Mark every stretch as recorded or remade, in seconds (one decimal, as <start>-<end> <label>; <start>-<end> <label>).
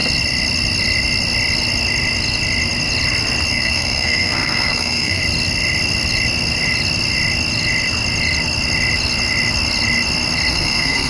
0.0-3.5 recorded; 3.5-5.2 remade; 5.2-10.5 recorded; 10.5-11.1 remade